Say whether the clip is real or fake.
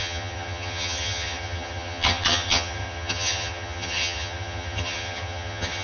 fake